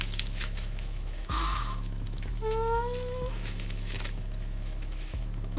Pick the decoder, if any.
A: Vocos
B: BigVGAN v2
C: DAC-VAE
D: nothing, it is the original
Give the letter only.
C